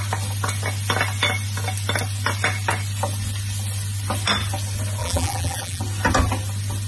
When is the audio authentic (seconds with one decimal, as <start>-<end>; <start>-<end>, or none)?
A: 0.0-5.0; 5.8-6.9